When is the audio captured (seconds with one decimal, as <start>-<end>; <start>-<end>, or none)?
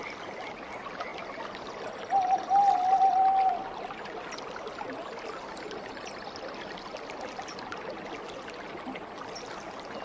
0.0-10.0